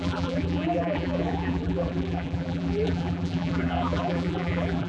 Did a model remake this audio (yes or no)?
yes